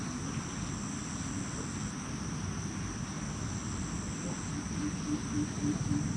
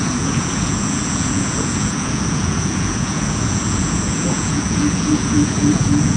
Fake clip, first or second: second